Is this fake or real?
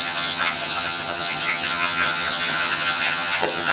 fake